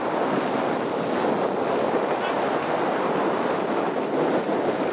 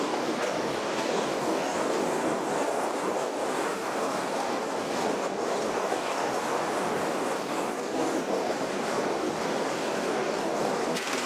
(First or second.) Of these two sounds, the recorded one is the first